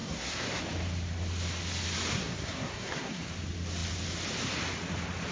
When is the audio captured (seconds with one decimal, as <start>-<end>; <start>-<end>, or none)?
0.6-2.1; 3.2-5.3